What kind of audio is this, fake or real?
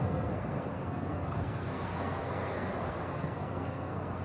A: fake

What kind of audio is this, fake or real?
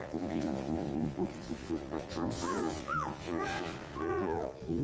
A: fake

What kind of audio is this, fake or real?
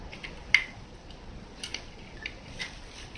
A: real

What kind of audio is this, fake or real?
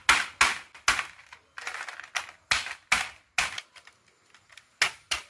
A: real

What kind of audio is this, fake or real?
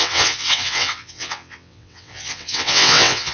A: fake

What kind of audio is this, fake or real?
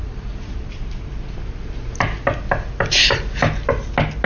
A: real